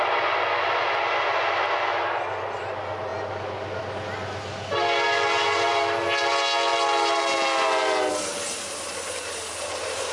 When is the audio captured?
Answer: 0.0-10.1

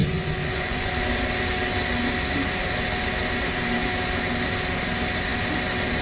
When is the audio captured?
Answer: 0.9-6.0

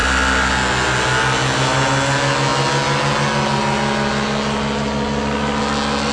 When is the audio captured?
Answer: 0.0-6.1

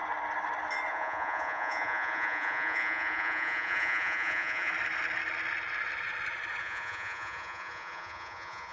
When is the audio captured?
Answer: 0.0-0.9; 4.7-6.6

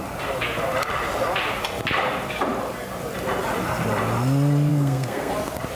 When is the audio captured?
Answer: 0.0-4.7; 5.3-5.8